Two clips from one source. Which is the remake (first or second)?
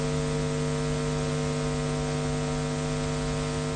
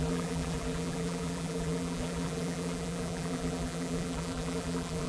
second